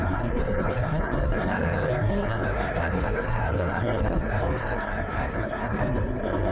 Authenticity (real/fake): fake